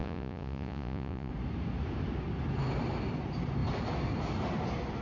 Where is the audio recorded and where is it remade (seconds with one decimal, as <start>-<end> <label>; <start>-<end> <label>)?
0.0-1.3 remade; 1.3-5.0 recorded